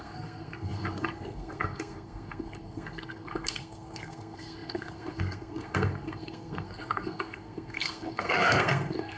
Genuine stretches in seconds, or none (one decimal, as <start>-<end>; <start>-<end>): none